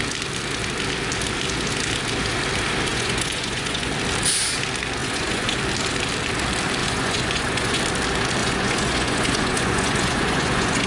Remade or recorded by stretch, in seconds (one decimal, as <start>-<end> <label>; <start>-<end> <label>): 0.0-2.9 recorded; 2.9-3.9 remade; 3.9-5.0 recorded; 5.0-5.6 remade; 5.6-6.8 recorded; 6.8-7.8 remade; 7.8-8.4 recorded; 8.4-10.9 remade